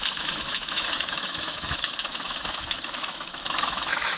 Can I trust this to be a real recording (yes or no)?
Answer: no